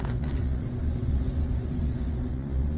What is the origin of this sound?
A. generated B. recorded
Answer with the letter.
A